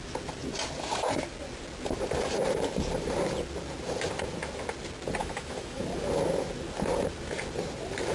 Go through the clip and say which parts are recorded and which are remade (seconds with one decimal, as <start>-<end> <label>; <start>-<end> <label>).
0.0-5.2 recorded; 5.2-5.8 remade; 5.8-8.1 recorded